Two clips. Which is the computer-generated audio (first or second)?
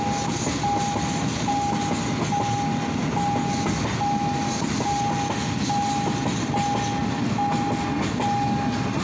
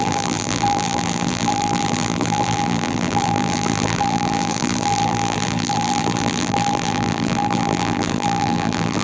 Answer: second